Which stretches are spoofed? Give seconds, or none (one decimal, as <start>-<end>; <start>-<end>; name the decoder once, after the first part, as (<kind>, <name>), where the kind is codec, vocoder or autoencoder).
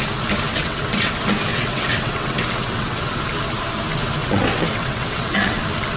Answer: 0.5-1.1 (vocoder, WaveNeXt); 1.5-3.2; 4.2-5.6